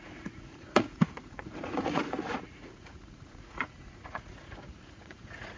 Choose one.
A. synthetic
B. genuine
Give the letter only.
A